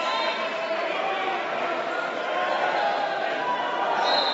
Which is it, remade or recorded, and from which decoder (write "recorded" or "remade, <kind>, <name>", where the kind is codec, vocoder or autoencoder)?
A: recorded